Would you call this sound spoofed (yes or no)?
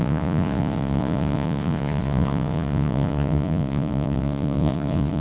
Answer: yes